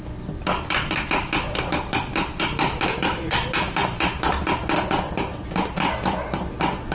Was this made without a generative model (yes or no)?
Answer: yes